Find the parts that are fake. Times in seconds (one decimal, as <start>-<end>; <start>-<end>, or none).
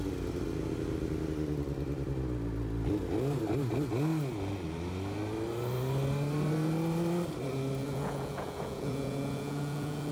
7.8-10.1